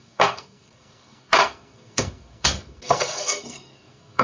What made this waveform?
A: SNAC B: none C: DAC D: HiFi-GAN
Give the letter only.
A